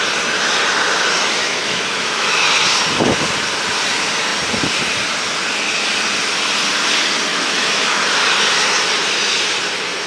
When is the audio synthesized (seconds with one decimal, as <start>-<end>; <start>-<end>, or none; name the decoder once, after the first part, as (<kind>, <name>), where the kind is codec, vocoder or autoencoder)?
1.4-2.4 (autoencoder, DAC-VAE); 7.3-8.0